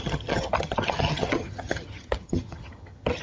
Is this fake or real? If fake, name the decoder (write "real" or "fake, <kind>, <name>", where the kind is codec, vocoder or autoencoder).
fake, vocoder, HiFi-GAN